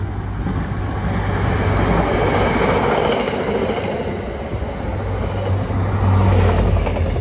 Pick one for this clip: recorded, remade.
recorded